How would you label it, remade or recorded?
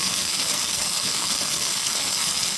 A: remade